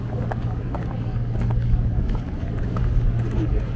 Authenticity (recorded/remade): remade